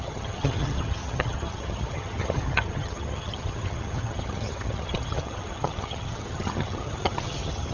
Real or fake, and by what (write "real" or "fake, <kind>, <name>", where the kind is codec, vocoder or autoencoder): fake, vocoder, HiFi-GAN